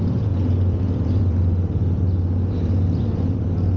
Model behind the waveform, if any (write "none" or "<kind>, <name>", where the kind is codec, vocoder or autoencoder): vocoder, BigVGAN v2